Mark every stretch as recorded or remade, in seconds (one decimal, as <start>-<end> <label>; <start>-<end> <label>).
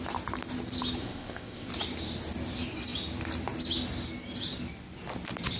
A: 0.0-1.0 recorded; 1.0-1.7 remade; 1.7-5.6 recorded